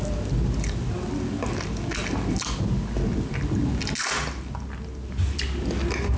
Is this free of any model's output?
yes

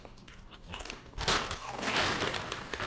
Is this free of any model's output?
no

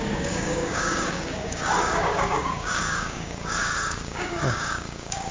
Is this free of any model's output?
no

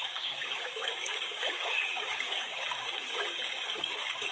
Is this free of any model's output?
no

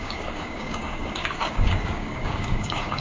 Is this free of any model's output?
no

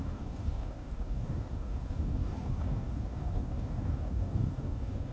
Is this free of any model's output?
no